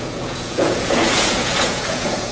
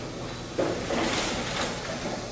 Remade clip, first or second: first